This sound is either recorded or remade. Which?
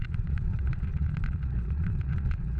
remade